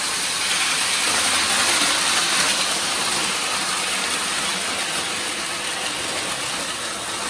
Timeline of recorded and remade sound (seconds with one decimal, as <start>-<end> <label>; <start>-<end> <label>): 0.0-7.3 recorded